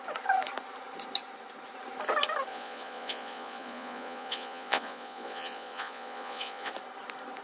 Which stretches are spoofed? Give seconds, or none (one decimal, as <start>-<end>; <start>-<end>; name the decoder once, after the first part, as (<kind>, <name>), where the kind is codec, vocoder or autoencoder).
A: 2.5-6.7 (vocoder, Vocos)